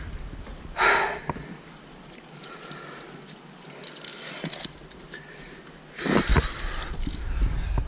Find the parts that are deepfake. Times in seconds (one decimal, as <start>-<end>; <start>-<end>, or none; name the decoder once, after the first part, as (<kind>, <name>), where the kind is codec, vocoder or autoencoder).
none